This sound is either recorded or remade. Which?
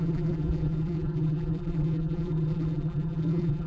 remade